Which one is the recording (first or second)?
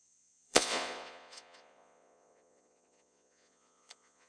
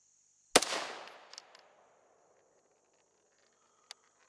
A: second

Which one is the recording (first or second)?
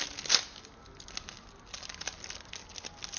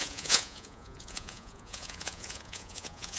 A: first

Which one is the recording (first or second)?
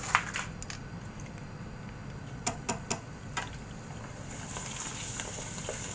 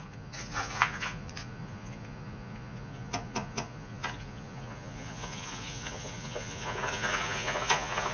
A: first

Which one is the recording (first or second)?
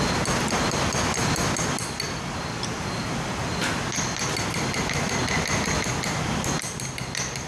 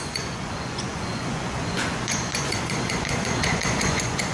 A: first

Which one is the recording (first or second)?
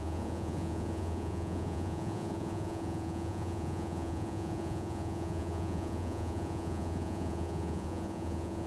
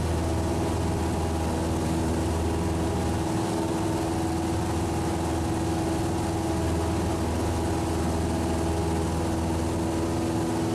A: second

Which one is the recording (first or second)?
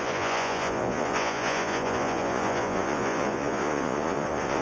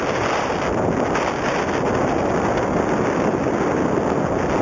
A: second